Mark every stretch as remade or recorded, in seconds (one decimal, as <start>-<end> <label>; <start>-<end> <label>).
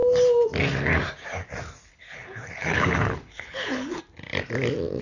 0.0-1.9 recorded; 1.9-4.0 remade; 4.0-5.0 recorded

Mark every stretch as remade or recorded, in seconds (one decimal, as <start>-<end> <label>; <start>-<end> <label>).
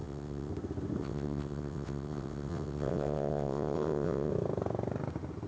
0.0-0.5 remade; 0.5-1.0 recorded; 1.0-4.3 remade; 4.3-5.5 recorded